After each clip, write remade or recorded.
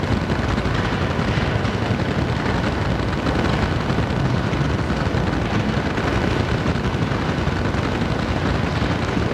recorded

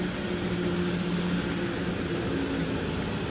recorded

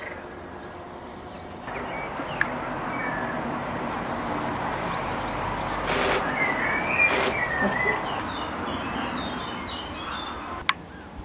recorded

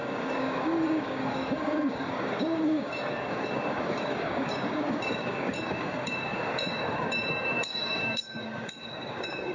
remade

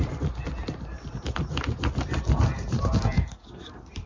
recorded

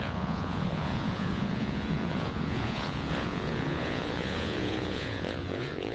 remade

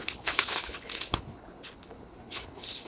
remade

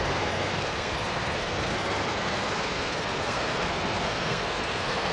remade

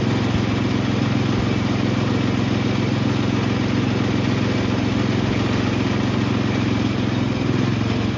recorded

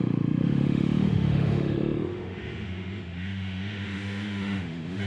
remade